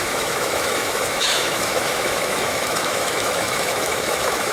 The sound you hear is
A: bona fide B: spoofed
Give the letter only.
B